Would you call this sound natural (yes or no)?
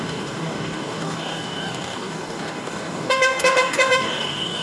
no